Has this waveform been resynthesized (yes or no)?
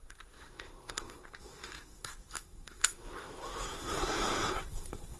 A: yes